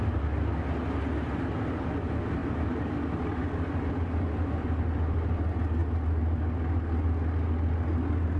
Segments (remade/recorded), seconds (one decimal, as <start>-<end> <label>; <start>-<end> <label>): 0.0-8.4 recorded